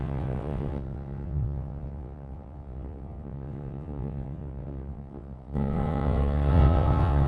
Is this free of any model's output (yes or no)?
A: no